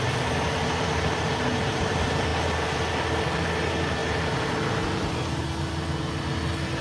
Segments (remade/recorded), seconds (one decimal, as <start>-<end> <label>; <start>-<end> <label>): 0.0-6.8 recorded